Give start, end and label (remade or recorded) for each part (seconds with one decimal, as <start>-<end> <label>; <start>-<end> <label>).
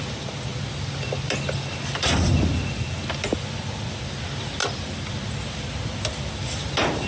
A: 0.0-7.1 recorded